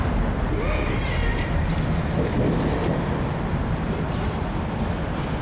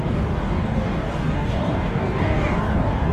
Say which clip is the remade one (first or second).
second